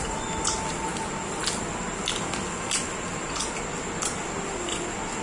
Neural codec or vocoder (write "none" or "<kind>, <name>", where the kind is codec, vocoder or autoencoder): none